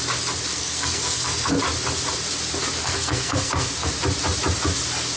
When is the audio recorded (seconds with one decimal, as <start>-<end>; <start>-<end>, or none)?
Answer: 0.0-0.5; 1.5-2.8; 3.9-5.2